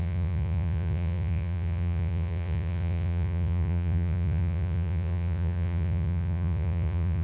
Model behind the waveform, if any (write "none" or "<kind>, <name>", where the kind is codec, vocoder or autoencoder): vocoder, Vocos